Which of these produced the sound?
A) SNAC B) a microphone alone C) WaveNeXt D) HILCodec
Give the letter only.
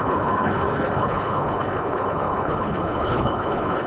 D